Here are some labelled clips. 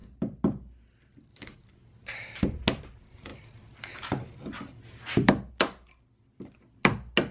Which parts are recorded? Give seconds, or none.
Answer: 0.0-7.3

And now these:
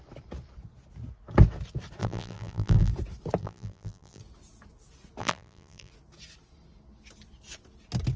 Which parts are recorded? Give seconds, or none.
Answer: 0.0-2.0; 2.9-3.4; 4.2-5.2; 5.9-8.2